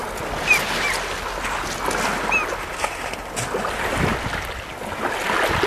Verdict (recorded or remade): recorded